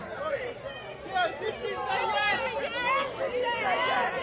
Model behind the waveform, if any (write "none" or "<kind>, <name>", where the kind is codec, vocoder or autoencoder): none